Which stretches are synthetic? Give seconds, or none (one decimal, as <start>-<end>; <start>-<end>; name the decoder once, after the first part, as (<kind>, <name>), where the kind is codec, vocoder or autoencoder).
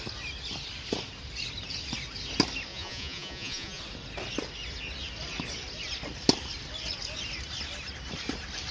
2.7-3.8 (vocoder, Vocos)